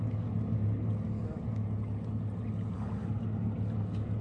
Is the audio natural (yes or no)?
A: yes